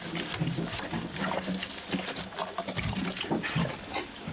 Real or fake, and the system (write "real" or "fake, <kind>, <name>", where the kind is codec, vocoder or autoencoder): real